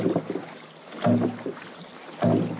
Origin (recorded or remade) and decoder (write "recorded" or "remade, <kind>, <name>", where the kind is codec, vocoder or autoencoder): recorded